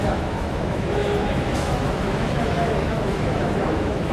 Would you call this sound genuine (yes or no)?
no